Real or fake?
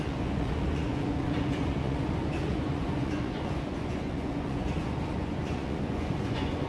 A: fake